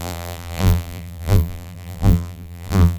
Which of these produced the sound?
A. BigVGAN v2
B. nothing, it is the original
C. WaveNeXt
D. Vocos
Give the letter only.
A